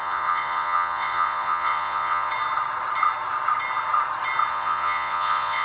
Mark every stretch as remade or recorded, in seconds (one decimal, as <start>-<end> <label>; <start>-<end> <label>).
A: 0.0-2.3 remade; 2.3-4.5 recorded; 4.5-5.6 remade

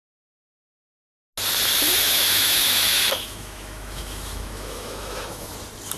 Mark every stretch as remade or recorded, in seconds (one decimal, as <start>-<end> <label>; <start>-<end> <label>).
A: 0.0-1.9 recorded; 1.9-5.5 remade; 5.5-6.0 recorded

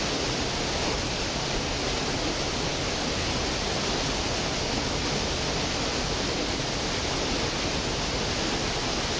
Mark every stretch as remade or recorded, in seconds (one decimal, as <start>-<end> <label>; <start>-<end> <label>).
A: 0.0-9.2 recorded

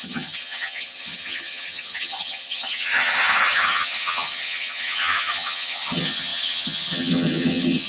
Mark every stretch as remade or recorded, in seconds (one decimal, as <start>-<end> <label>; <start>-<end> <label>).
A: 0.0-7.9 remade